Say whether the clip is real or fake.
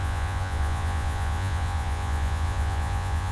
fake